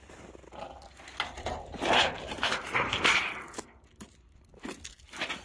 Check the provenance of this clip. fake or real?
real